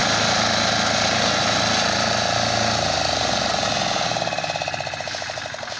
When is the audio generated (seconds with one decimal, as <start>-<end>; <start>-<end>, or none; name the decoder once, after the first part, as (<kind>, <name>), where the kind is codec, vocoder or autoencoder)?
none